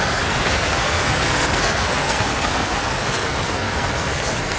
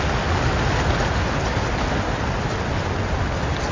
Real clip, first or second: second